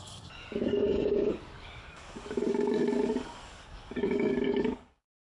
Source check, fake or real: fake